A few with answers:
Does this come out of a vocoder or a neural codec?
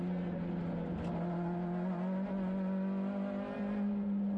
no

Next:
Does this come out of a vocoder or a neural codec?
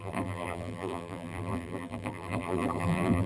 yes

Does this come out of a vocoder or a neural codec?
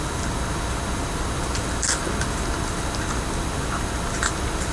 no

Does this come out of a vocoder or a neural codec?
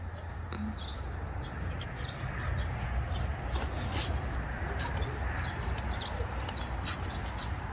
no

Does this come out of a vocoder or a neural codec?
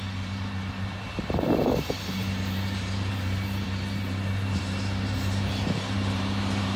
yes